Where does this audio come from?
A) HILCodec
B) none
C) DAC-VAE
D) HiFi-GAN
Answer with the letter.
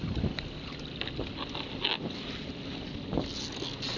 B